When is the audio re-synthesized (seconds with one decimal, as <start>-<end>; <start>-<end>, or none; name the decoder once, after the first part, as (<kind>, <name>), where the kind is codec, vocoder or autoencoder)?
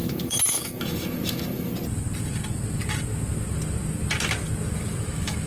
0.0-1.7 (autoencoder, DAC-VAE); 5.0-5.5